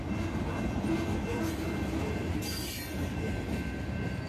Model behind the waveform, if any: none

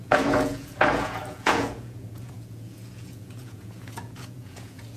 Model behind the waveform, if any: vocoder, Vocos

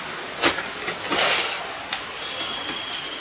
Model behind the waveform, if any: none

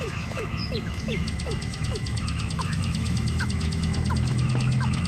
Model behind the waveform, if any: autoencoder, DAC-VAE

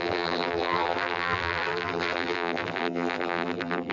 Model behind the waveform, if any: vocoder, BigVGAN v2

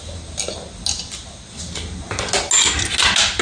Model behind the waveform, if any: none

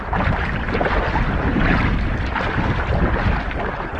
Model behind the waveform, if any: none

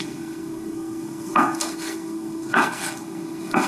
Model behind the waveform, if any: codec, SNAC